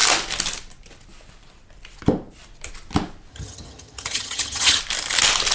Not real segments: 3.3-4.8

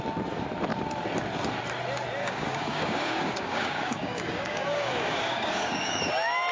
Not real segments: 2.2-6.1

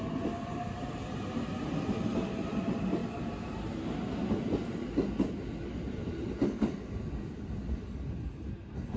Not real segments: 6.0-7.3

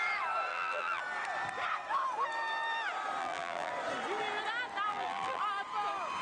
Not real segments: 0.5-1.0; 3.2-3.7; 4.9-5.4